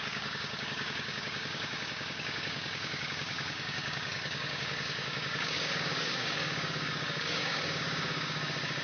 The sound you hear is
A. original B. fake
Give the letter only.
B